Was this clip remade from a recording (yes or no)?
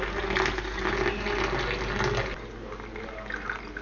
no